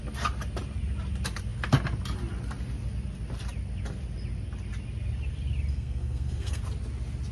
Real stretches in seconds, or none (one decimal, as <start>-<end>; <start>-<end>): 0.0-5.7; 6.6-7.3